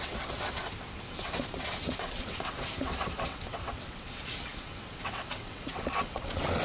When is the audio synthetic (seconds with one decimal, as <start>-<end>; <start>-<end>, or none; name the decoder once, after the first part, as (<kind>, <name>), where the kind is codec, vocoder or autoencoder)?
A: 0.0-6.6 (vocoder, WaveNeXt)